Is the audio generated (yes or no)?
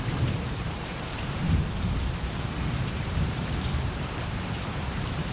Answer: yes